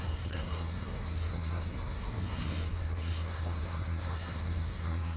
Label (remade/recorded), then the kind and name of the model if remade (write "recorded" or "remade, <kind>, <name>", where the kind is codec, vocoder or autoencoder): remade, codec, SNAC